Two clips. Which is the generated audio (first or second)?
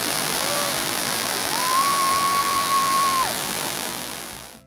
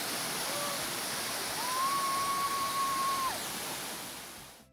first